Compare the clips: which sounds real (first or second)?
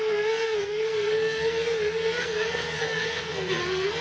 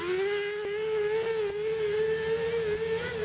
second